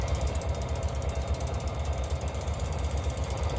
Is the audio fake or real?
fake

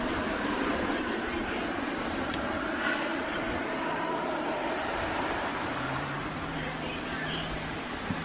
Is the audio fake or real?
fake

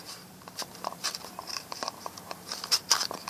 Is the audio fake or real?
fake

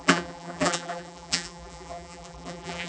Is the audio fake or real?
fake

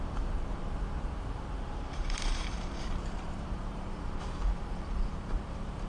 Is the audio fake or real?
fake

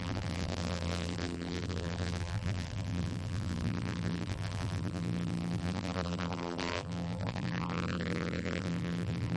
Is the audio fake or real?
fake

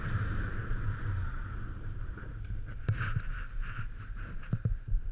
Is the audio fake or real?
real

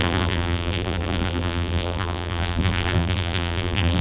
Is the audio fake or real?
fake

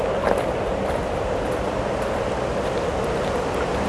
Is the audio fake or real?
real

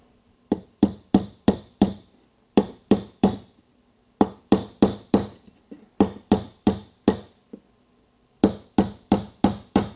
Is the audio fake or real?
fake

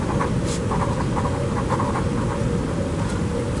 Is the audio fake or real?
fake